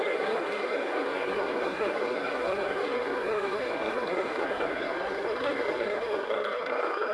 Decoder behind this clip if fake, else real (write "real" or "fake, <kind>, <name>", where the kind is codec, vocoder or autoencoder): fake, codec, SNAC